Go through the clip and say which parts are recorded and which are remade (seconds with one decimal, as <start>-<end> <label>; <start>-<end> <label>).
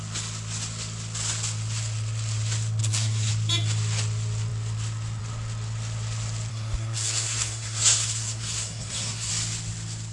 0.0-2.8 recorded; 2.8-3.3 remade; 3.3-6.5 recorded; 6.5-9.3 remade; 9.3-10.1 recorded